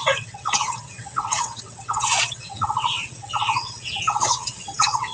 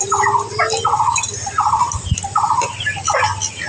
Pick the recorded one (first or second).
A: second